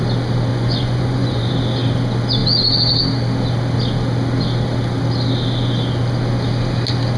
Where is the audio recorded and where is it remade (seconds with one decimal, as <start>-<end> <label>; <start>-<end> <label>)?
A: 0.0-0.5 recorded; 0.5-1.5 remade; 1.5-7.2 recorded